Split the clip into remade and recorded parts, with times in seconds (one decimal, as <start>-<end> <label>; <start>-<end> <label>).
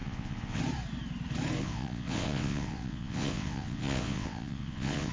0.0-0.6 remade; 0.6-1.6 recorded; 1.6-5.1 remade